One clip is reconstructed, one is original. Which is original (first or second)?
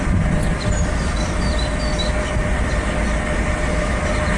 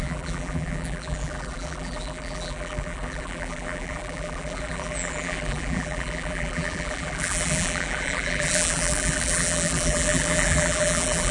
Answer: first